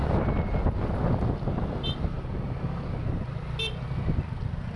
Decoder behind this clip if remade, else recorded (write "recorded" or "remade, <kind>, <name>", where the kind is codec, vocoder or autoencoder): recorded